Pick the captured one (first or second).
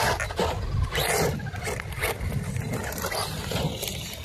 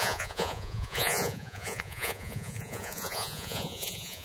first